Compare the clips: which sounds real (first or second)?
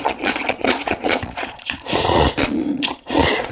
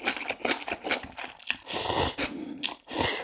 second